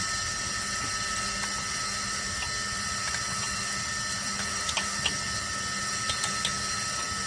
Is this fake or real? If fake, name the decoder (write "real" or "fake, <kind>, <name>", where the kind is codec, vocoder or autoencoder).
real